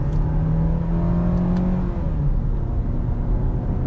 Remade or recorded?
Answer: recorded